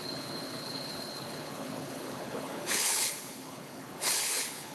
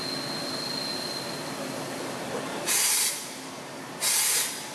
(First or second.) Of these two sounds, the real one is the second